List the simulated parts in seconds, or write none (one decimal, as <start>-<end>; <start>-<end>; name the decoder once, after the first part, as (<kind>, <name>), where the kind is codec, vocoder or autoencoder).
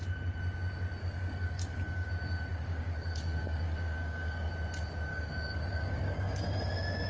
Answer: 1.0-2.1 (codec, DAC); 2.5-4.5; 5.1-6.4